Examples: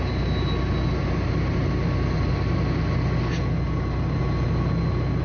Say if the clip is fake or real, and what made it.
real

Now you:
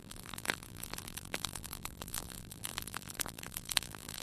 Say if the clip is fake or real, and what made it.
fake, vocoder, BigVGAN v2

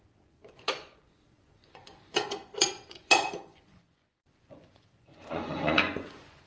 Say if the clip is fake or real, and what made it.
fake, vocoder, Vocos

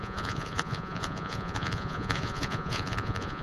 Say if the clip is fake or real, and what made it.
fake, vocoder, Vocos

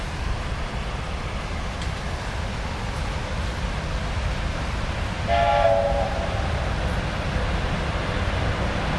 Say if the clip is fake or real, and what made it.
real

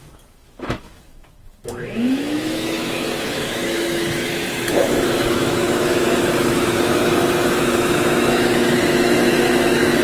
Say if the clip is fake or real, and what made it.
fake, autoencoder, DAC-VAE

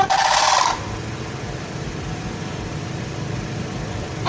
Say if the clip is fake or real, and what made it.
fake, vocoder, BigVGAN v2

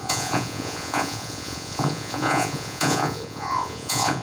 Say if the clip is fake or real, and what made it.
fake, vocoder, Vocos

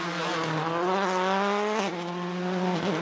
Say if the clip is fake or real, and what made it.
real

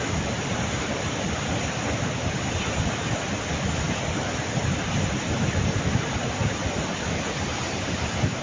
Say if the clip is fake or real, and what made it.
real